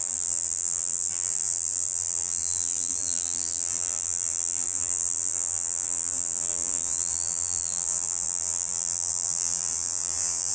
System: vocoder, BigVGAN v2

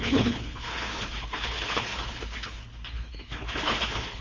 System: codec, HILCodec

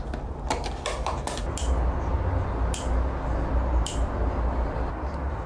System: none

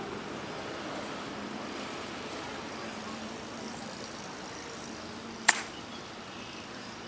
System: vocoder, BigVGAN v2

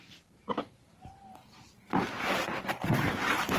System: vocoder, BigVGAN v2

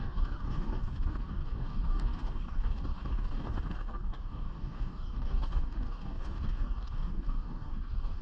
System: codec, DAC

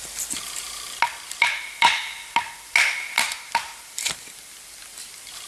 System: none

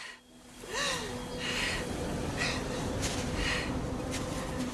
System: none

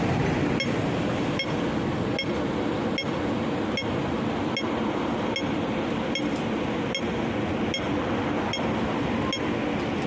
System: none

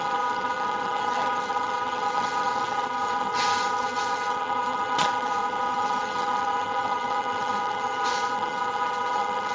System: vocoder, HiFi-GAN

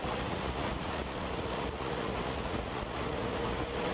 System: vocoder, Vocos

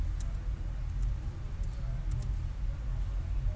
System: none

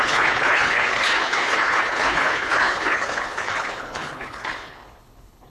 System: codec, HILCodec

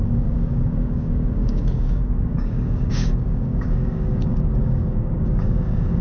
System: codec, DAC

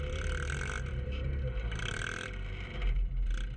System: vocoder, BigVGAN v2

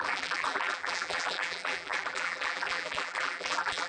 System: vocoder, BigVGAN v2